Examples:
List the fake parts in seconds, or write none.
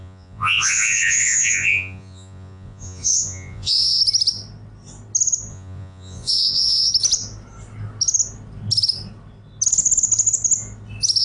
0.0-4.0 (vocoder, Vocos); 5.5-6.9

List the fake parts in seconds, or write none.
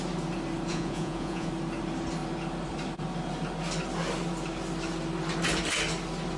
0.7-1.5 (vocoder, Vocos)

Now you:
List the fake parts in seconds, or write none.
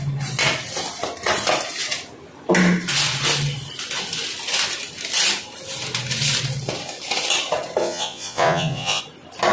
7.8-9.0 (vocoder, Vocos)